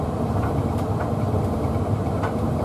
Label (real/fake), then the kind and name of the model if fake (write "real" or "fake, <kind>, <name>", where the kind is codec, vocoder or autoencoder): fake, vocoder, BigVGAN v2